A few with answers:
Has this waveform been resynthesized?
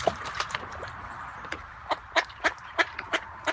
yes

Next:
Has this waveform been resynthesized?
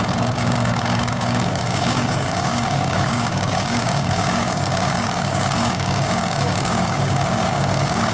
yes